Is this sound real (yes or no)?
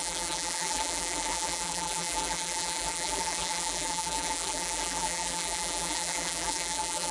no